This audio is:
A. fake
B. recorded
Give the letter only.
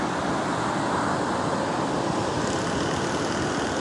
B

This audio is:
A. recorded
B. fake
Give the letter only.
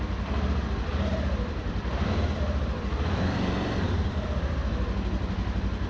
B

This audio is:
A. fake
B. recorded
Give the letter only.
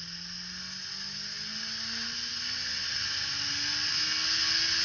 B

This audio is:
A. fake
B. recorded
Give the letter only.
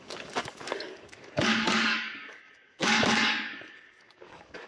A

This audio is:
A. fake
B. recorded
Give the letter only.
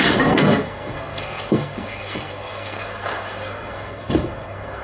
A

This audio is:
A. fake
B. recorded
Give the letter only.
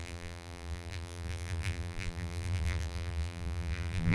A